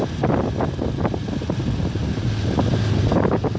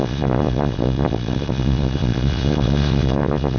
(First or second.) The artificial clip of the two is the second